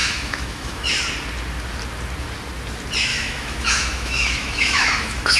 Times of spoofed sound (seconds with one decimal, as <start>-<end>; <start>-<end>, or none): 0.0-0.9; 3.1-5.4

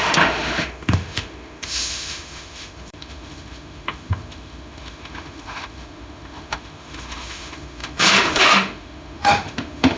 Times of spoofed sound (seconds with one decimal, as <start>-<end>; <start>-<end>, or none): 0.0-10.0

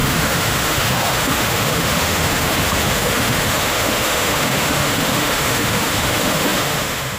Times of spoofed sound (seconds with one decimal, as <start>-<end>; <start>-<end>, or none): 0.0-7.2

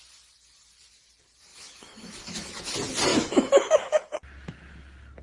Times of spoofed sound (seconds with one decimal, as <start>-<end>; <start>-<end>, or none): 1.5-2.6; 3.1-4.0

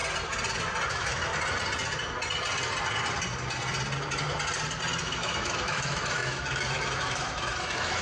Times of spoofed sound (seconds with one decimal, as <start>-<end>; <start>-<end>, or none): 0.9-1.3; 5.0-8.0